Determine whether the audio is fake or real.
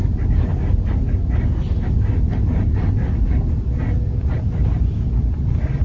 real